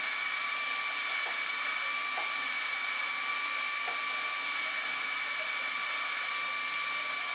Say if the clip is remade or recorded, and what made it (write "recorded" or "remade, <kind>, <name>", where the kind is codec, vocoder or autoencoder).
recorded